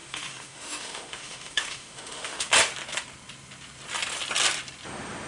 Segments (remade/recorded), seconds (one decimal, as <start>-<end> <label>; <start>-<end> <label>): 0.0-2.5 remade; 2.5-5.3 recorded